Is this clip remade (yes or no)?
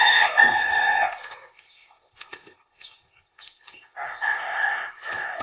yes